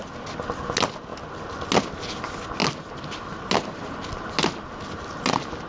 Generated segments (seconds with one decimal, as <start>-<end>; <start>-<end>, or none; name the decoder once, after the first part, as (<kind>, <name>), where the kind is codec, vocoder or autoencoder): none